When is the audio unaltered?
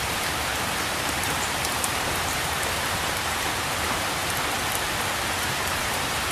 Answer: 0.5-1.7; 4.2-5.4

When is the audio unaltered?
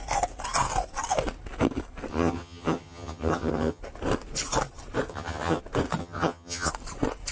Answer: 0.0-2.1; 3.8-5.1; 5.6-6.0; 6.7-7.3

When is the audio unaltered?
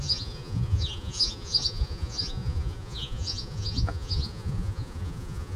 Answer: none